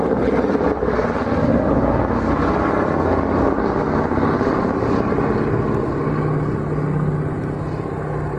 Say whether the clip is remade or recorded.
recorded